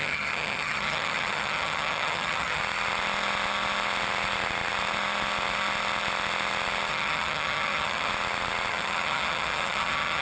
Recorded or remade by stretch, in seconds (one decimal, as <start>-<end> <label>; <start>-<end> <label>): 0.0-2.6 remade; 2.6-6.9 recorded; 6.9-8.1 remade; 8.1-8.7 recorded; 8.7-10.2 remade